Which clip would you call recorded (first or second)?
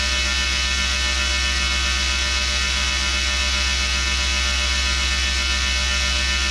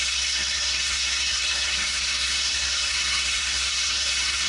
first